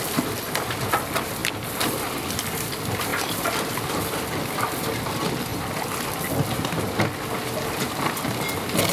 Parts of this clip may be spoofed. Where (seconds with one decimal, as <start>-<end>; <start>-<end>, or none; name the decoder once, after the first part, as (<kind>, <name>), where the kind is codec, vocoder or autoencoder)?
3.1-3.8 (vocoder, BigVGAN v2); 5.5-6.1